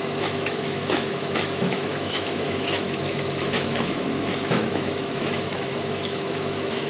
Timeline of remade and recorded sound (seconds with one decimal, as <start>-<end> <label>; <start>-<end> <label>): 0.0-6.9 remade